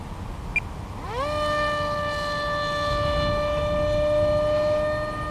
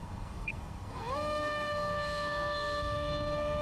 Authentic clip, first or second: first